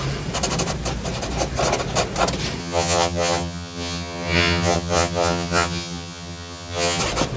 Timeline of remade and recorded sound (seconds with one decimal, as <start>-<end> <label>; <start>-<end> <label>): 0.0-2.6 recorded; 2.6-7.0 remade; 7.0-7.4 recorded